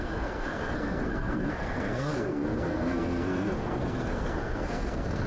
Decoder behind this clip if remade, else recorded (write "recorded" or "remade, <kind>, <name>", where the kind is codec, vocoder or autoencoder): remade, codec, SNAC